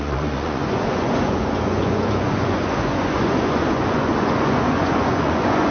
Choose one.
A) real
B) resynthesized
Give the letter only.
B